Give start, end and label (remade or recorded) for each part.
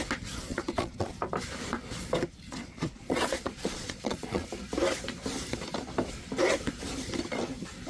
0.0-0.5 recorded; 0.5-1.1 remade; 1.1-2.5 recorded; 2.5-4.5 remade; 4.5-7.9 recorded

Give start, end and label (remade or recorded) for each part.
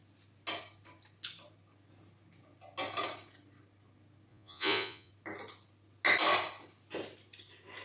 0.0-4.3 recorded; 4.3-5.1 remade; 5.1-7.8 recorded